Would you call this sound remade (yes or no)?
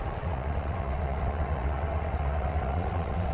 yes